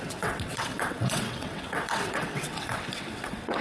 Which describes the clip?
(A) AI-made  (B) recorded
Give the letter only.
A